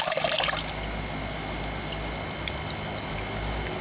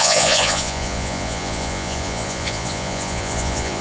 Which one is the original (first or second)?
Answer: first